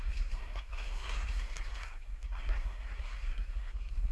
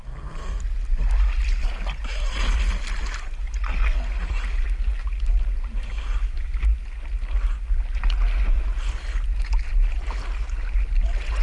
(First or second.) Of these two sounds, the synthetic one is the first